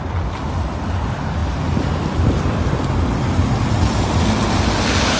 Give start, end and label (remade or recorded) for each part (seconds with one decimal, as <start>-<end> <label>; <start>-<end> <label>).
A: 0.0-5.2 recorded